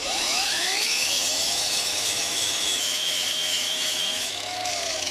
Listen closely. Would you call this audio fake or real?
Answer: fake